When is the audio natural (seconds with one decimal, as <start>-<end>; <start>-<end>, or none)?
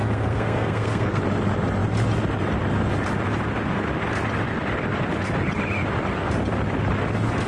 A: 1.2-7.5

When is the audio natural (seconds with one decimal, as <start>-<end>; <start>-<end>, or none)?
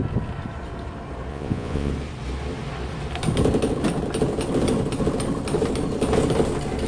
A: 0.0-1.3; 1.9-6.9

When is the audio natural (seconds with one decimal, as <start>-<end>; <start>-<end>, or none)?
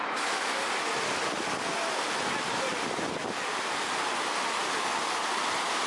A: 0.6-5.9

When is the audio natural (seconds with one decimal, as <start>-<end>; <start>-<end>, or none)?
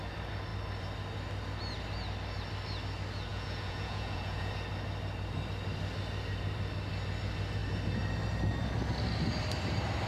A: 0.0-3.3; 4.5-10.1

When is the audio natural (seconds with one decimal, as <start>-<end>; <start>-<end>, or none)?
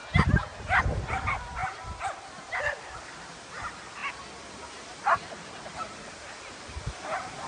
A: 0.0-7.5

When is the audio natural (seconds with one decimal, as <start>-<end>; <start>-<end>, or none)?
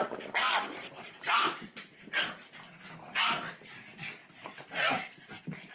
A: 0.0-5.7